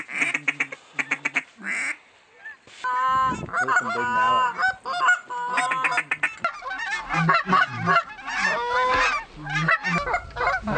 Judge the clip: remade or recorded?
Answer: recorded